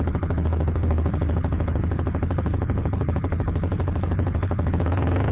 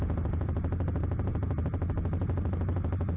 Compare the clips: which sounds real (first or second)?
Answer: second